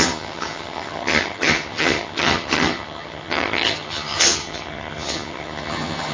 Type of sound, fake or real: fake